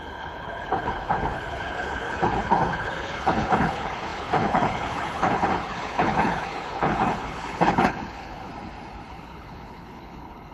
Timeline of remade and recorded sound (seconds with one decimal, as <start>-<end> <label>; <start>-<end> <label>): 0.0-8.5 remade; 8.5-9.1 recorded; 9.1-10.5 remade